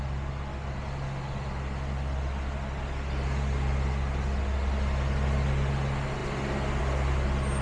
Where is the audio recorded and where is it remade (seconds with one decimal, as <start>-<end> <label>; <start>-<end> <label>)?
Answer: 0.0-7.6 recorded